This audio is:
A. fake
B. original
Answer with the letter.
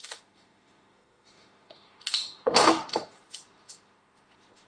A